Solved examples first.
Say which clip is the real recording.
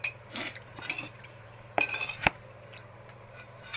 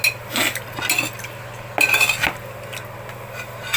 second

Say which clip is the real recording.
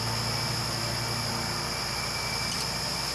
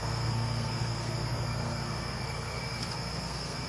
first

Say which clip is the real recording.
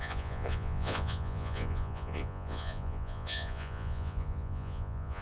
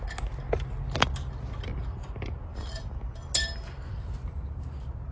second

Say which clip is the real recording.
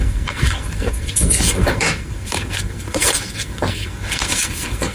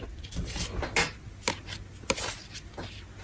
second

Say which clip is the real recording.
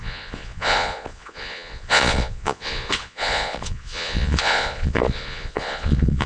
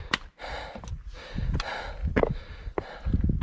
second